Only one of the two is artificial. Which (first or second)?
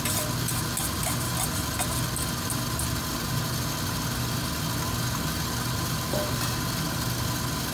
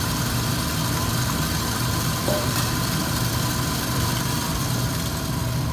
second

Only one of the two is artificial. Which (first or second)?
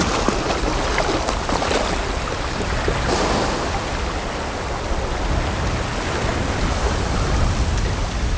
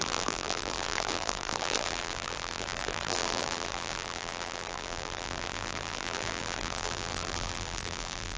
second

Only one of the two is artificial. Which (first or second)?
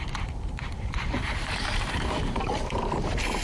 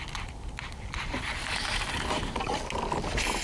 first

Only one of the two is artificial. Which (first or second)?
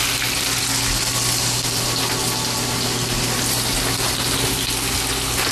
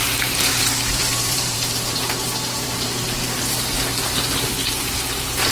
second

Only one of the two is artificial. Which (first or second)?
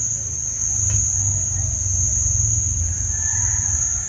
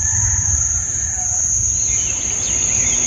second